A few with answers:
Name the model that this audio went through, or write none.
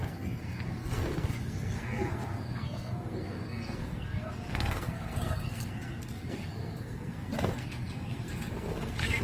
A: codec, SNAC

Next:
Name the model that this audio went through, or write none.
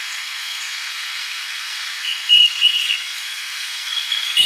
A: codec, SNAC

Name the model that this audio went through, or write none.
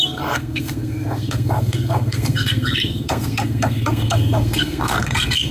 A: codec, SNAC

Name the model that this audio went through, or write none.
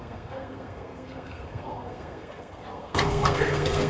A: codec, SNAC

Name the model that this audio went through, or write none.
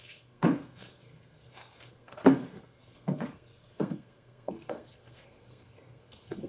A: codec, SNAC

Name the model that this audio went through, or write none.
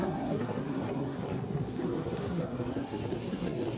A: codec, SNAC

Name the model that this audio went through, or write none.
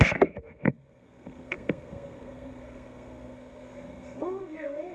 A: codec, SNAC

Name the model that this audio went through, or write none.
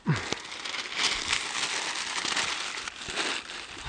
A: none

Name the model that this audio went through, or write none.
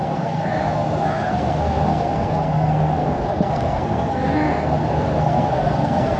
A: codec, SNAC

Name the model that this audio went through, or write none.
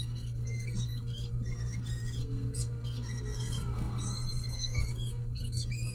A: codec, SNAC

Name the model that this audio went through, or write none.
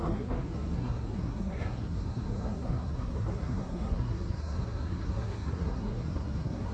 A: codec, SNAC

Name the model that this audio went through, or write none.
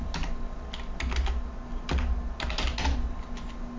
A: none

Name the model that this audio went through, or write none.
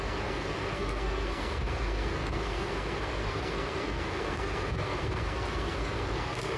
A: codec, SNAC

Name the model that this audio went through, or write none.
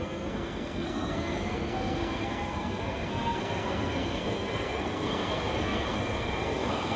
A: codec, SNAC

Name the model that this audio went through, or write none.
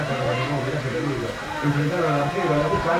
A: none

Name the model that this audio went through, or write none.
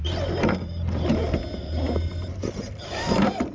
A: none